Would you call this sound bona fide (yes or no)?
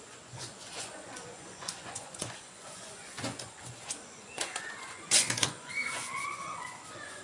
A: no